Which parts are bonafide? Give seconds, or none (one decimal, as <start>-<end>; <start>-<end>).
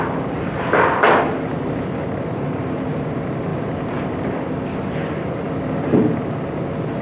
none